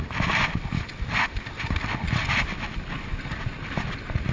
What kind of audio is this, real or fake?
real